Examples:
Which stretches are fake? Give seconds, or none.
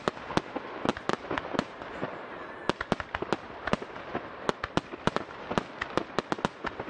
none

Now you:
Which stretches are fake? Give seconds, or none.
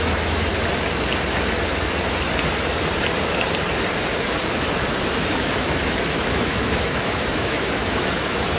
0.0-0.5 (autoencoder, DAC-VAE); 5.1-8.6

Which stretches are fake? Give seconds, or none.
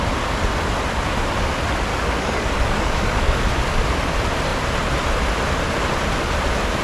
1.9-3.6 (codec, DAC)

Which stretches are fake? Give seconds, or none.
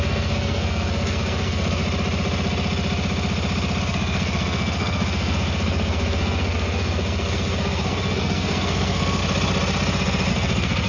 0.0-1.8 (codec, SNAC); 3.8-9.2; 10.3-10.9